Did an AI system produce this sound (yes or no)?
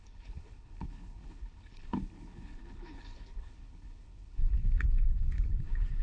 yes